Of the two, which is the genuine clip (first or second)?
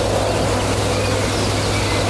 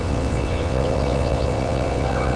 first